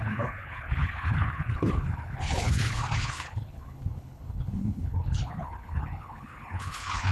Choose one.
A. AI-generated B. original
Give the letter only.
A